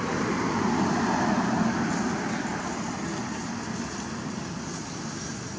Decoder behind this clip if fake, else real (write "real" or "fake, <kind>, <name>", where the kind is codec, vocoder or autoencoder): real